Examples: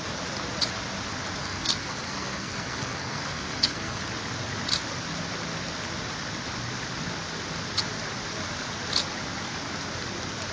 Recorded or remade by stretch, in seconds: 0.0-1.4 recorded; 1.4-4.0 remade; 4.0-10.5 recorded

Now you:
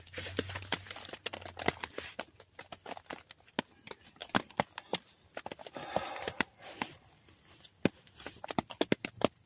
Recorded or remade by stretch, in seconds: 0.0-9.5 recorded